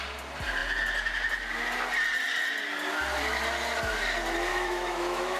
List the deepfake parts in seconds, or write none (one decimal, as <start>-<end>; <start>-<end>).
4.5-5.4